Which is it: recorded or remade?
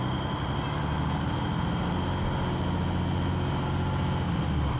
recorded